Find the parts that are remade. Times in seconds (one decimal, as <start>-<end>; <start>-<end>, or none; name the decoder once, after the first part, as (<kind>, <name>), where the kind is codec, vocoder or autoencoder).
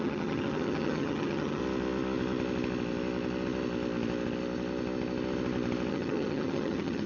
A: 0.0-1.6 (vocoder, HiFi-GAN); 5.9-7.1